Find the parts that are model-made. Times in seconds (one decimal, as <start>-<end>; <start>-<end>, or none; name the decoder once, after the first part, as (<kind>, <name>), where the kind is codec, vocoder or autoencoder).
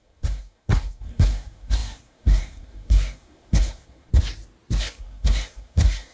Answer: 0.0-4.1 (codec, SNAC); 4.8-6.1